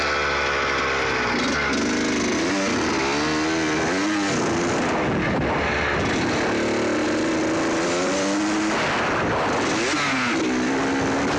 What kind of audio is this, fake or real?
real